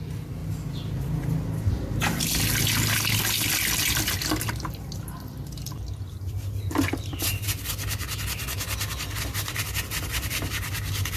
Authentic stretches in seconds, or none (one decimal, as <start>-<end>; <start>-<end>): 0.0-11.2